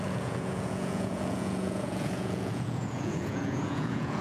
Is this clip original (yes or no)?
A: no